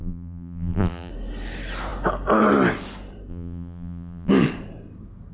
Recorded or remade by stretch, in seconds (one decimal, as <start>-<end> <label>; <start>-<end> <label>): 0.0-1.1 remade; 1.1-3.3 recorded; 3.3-4.3 remade; 4.3-5.3 recorded